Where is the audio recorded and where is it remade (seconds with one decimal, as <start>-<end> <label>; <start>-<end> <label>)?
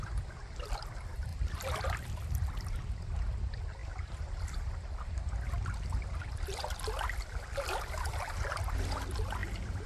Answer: 0.0-1.3 recorded; 1.3-3.2 remade; 3.2-9.9 recorded